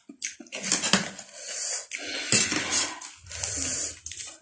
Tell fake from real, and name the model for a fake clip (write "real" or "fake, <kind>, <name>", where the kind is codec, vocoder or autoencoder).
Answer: real